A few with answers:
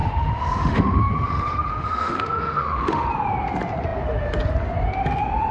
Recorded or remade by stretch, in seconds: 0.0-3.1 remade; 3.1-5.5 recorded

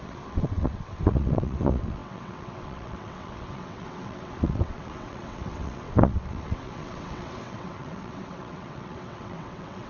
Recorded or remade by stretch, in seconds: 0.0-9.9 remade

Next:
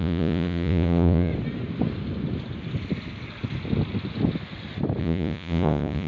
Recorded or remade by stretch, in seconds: 0.0-1.3 remade; 1.3-5.0 recorded; 5.0-6.1 remade

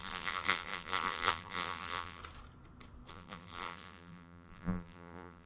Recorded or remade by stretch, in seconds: 0.0-2.2 remade; 2.2-3.1 recorded; 3.1-5.5 remade